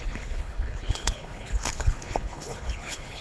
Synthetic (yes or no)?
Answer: yes